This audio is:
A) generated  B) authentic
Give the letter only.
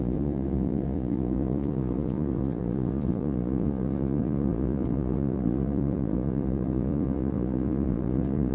A